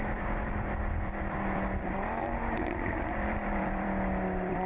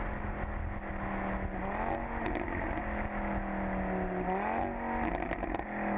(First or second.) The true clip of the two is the second